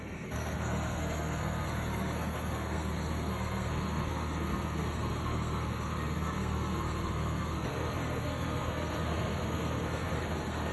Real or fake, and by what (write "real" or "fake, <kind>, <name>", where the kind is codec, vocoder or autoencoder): fake, codec, SNAC